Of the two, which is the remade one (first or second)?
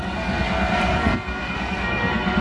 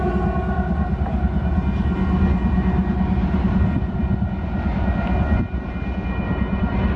first